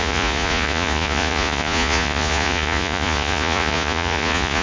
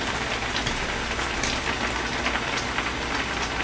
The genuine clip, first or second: second